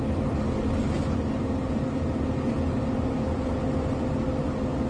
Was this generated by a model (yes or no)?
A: no